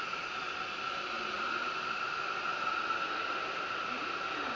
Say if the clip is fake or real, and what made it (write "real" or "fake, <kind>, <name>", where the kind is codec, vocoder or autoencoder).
real